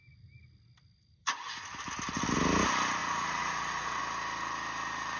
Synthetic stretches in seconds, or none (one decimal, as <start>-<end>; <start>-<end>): 3.0-4.0